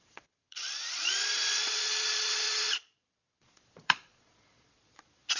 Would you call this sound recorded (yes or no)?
no